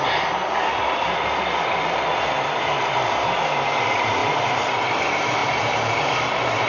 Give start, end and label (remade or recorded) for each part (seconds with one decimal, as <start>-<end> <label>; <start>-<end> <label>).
0.0-4.2 recorded; 4.2-4.7 remade; 4.7-5.4 recorded; 5.4-6.7 remade